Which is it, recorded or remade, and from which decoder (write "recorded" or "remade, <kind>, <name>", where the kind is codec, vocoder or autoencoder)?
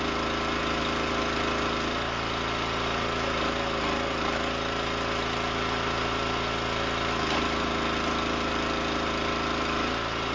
recorded